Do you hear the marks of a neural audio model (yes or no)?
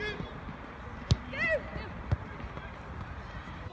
no